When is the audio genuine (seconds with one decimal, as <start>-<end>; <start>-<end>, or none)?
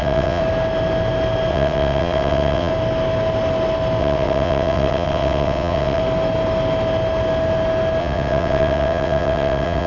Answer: 0.4-1.5; 2.7-4.0; 6.0-8.0